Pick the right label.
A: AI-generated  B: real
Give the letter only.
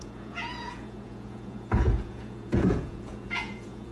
A